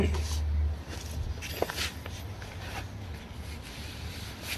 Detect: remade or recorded recorded